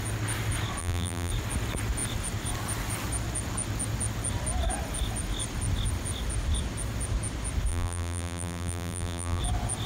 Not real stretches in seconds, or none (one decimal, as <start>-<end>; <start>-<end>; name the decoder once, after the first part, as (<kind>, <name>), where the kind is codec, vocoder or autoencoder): 0.8-1.3 (vocoder, BigVGAN v2); 7.7-9.4